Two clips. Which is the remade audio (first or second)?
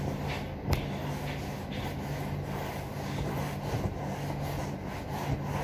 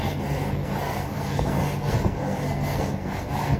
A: second